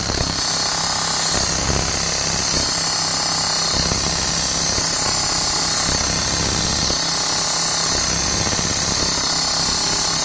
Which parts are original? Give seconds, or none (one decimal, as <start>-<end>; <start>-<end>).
0.0-10.2